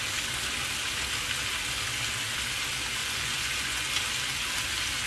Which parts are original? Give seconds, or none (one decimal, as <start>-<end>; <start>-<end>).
0.0-3.0; 3.9-5.1